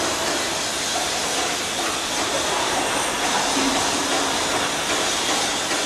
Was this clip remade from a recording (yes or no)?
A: yes